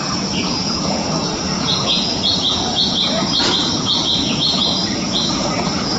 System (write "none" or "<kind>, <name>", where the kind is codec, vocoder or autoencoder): vocoder, Vocos